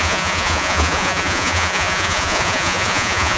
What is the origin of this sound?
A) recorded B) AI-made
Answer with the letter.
B